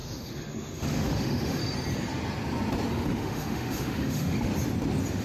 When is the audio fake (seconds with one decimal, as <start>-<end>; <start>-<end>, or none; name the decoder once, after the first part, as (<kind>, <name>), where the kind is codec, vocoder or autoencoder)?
0.0-1.6 (autoencoder, DAC-VAE); 2.9-4.5